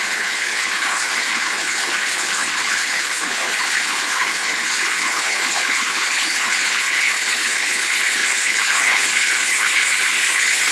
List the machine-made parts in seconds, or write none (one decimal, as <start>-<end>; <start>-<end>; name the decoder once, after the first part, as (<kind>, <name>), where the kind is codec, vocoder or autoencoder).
0.0-10.7 (codec, HILCodec)